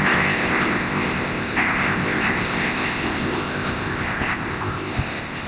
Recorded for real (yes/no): no